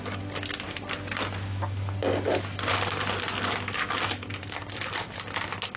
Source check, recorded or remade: recorded